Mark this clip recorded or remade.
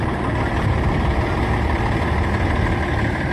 recorded